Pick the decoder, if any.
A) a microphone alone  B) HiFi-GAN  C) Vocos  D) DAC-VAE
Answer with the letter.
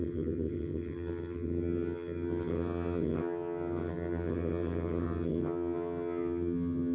B